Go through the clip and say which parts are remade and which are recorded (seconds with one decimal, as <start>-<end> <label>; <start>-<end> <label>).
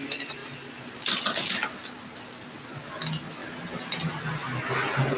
0.0-5.2 recorded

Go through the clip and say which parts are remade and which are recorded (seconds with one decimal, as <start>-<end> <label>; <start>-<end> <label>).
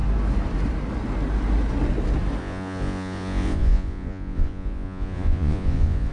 0.0-2.4 recorded; 2.4-6.1 remade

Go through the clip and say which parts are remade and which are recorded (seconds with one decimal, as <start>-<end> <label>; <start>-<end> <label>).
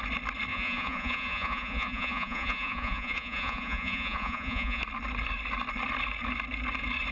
0.0-0.5 recorded; 0.5-4.8 remade; 4.8-7.1 recorded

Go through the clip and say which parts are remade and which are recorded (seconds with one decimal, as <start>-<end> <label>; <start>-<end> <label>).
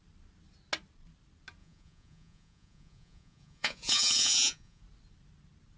0.0-1.6 recorded; 1.6-4.8 remade; 4.8-5.8 recorded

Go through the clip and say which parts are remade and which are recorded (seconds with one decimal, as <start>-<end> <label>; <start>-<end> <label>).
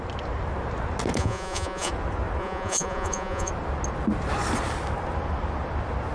0.0-1.2 recorded; 1.2-1.9 remade; 1.9-2.4 recorded; 2.4-3.5 remade; 3.5-6.1 recorded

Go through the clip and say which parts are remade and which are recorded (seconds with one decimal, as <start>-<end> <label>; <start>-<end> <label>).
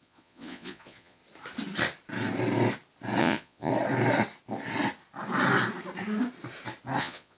0.0-1.2 remade; 1.2-3.2 recorded; 3.2-3.7 remade; 3.7-7.0 recorded; 7.0-7.4 remade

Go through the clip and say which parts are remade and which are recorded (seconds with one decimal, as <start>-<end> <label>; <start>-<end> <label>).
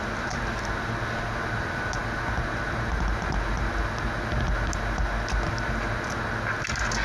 0.0-7.0 recorded